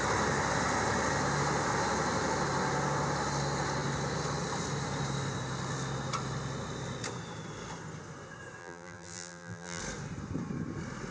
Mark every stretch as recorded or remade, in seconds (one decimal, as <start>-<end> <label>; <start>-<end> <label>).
0.0-8.6 recorded; 8.6-9.8 remade; 9.8-11.1 recorded